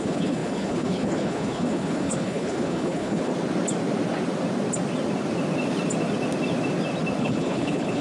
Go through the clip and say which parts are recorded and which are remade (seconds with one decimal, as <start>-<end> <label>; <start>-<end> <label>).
0.0-3.3 remade; 3.3-7.2 recorded; 7.2-8.0 remade